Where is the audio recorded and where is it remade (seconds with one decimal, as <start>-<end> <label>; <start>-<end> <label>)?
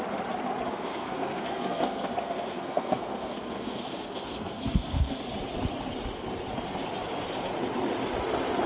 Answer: 0.0-0.7 recorded; 0.7-5.2 remade; 5.2-8.7 recorded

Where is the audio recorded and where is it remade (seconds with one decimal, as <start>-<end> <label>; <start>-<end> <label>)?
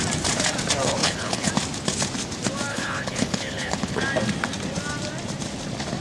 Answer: 0.0-1.0 recorded; 1.0-1.5 remade; 1.5-2.7 recorded; 2.7-4.0 remade; 4.0-6.0 recorded